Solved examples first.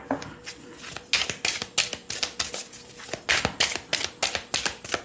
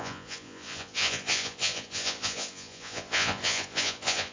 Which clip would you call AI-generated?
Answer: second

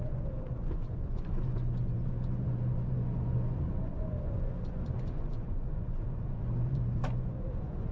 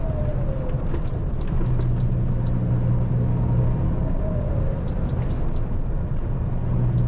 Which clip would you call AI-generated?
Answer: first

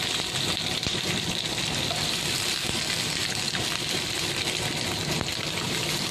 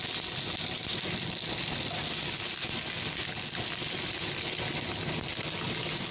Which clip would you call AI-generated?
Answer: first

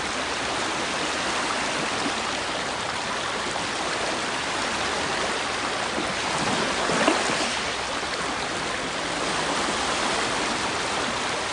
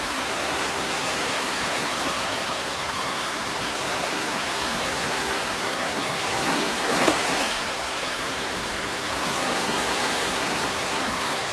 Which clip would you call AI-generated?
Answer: second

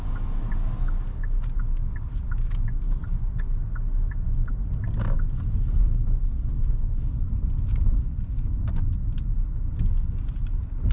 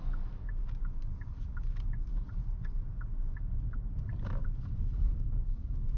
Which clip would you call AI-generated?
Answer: second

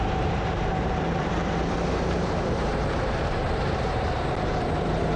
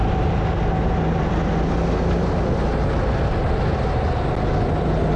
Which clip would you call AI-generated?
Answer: first